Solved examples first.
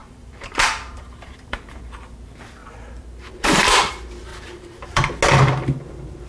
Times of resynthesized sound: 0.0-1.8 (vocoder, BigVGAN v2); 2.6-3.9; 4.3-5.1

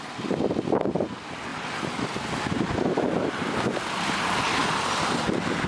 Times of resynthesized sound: 4.6-5.3 (vocoder, BigVGAN v2)

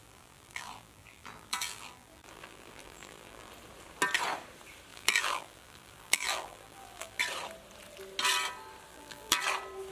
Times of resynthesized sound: 0.0-3.5 (vocoder, BigVGAN v2); 4.9-7.2; 8.9-9.4

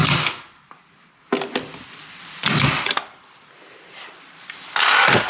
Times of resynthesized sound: 0.0-0.8 (vocoder, BigVGAN v2); 1.7-5.3

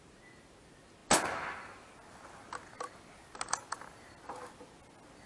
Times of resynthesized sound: none

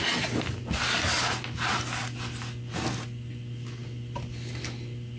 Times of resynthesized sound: none

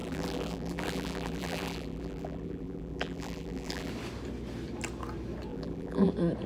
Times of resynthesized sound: 0.0-3.9 (vocoder, BigVGAN v2); 5.5-6.1

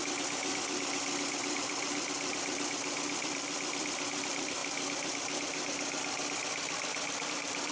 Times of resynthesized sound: 1.4-4.6 (vocoder, BigVGAN v2); 7.3-7.7